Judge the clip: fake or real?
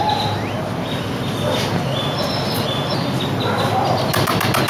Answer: real